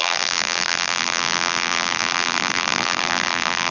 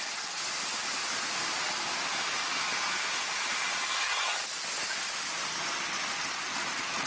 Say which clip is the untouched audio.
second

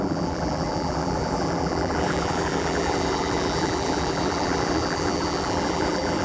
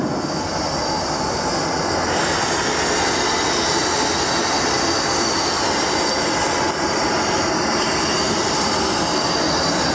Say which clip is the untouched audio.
second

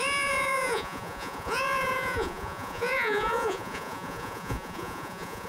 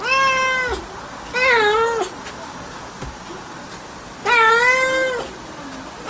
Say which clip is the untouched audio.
second